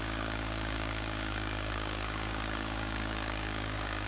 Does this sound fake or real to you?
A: fake